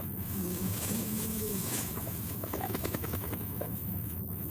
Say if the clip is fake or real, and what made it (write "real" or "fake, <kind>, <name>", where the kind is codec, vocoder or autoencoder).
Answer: fake, autoencoder, DAC-VAE